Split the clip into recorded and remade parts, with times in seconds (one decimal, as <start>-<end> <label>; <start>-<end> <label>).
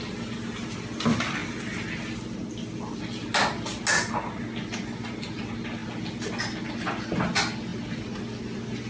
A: 0.0-8.9 recorded